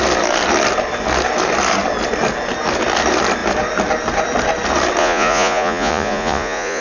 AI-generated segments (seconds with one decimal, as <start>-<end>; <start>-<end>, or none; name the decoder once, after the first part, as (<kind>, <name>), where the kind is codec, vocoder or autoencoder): 5.0-6.8 (vocoder, Vocos)